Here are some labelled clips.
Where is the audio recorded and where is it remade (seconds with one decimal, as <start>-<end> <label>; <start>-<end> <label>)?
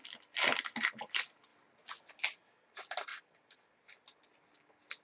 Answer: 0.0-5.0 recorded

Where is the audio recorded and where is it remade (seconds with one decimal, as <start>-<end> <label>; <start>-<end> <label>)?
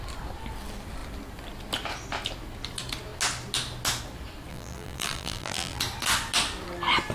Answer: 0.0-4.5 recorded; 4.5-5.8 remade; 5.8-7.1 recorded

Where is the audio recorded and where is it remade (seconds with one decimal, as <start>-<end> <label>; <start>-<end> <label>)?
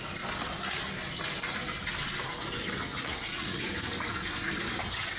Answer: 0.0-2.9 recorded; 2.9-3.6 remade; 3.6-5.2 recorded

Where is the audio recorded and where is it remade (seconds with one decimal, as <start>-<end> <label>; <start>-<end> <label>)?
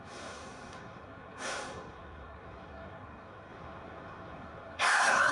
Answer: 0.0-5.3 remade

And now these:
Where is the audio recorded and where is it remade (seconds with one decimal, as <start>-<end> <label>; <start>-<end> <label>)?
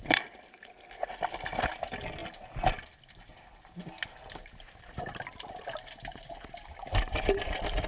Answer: 0.0-0.5 recorded; 0.5-1.1 remade; 1.1-7.9 recorded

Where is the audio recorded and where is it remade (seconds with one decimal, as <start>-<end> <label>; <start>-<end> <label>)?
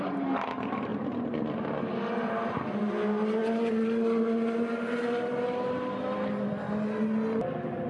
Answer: 0.0-7.9 recorded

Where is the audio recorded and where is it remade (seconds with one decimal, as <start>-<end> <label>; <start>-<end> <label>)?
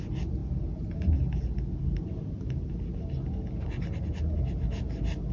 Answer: 0.0-5.3 recorded